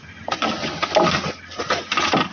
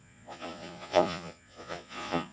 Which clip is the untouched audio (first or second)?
first